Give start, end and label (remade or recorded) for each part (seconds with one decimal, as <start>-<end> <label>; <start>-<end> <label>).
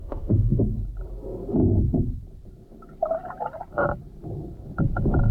0.0-0.6 remade; 0.6-5.3 recorded